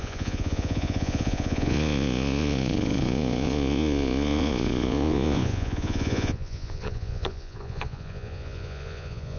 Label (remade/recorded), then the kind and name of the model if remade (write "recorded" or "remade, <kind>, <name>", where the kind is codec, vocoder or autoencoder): remade, vocoder, Vocos